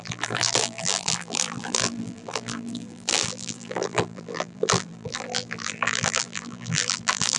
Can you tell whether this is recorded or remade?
remade